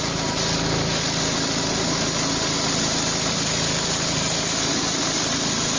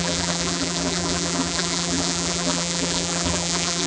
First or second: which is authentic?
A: first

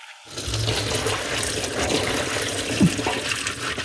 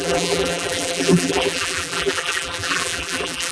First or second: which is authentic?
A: first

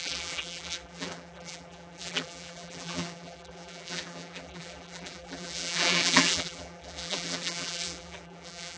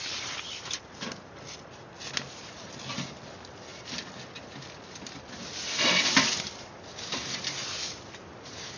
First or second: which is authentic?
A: second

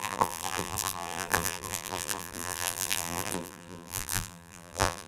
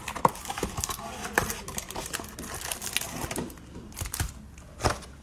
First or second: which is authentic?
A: second